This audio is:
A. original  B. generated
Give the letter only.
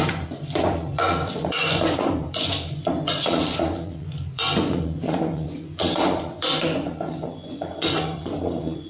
B